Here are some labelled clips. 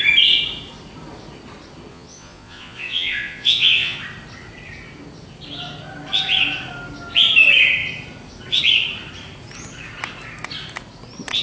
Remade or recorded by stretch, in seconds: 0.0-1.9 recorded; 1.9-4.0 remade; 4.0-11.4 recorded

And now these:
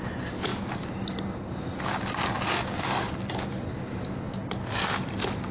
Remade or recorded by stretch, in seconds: 0.0-5.5 recorded

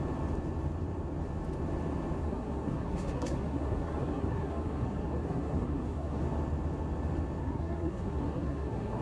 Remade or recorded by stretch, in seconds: 0.0-2.2 recorded; 2.2-6.2 remade; 6.2-7.4 recorded; 7.4-9.0 remade

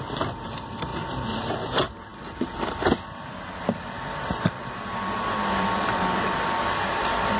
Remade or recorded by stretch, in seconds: 0.0-7.4 recorded

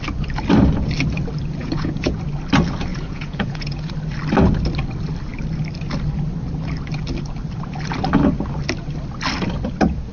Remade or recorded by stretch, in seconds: 0.0-1.6 recorded; 1.6-2.2 remade; 2.2-2.9 recorded; 2.9-3.9 remade; 3.9-10.1 recorded

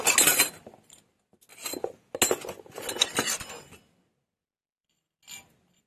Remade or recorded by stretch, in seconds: 0.0-5.9 recorded

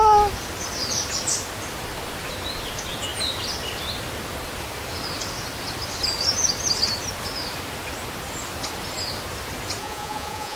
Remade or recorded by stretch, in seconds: 0.0-9.8 recorded; 9.8-10.6 remade

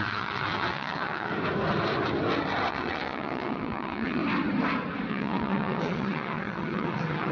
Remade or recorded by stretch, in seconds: 0.0-1.3 remade; 1.3-2.7 recorded; 2.7-4.2 remade; 4.2-5.1 recorded; 5.1-7.3 remade